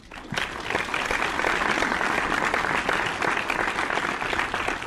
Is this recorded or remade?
recorded